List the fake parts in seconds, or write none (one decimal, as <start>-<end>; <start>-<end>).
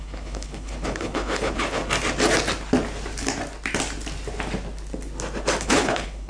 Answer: 0.0-1.8; 5.6-6.3